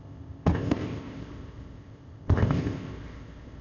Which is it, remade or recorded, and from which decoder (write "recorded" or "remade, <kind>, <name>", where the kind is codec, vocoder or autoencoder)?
remade, codec, ZipCodec